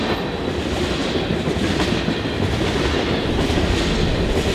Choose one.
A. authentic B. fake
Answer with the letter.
A